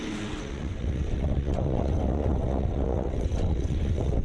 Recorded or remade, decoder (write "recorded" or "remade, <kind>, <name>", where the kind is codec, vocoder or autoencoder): remade, vocoder, WaveNeXt